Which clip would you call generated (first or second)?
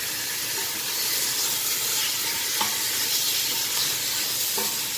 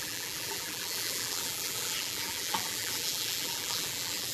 second